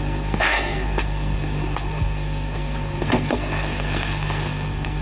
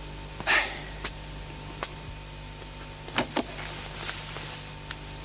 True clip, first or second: second